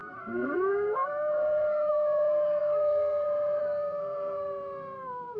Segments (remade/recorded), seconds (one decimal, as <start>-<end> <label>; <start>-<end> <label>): 0.0-5.4 remade